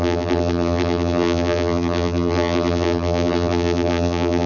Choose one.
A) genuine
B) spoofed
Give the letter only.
B